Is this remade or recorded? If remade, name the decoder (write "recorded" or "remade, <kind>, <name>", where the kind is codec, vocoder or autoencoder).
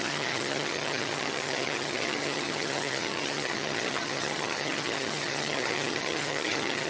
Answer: remade, vocoder, HiFi-GAN